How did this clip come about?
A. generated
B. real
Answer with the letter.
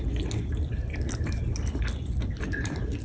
B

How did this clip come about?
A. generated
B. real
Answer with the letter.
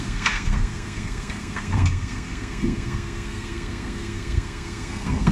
A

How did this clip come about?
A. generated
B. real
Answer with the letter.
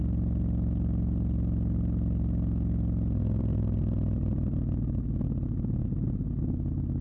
B